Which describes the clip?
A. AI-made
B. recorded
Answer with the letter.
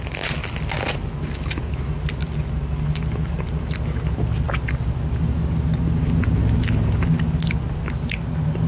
B